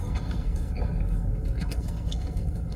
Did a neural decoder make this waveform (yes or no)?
yes